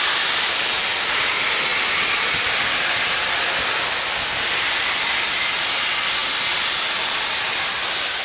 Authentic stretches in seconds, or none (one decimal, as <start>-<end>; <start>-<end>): 0.0-8.2